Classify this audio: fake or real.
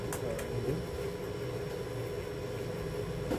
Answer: real